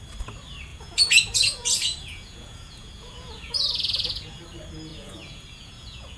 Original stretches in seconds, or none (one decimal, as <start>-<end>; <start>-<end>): 0.0-0.7; 4.4-4.9